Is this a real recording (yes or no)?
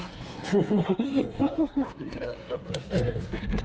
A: no